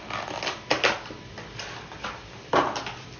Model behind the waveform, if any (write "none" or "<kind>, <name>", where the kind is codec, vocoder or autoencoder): none